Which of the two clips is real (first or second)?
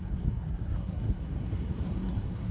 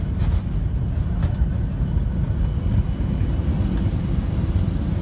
second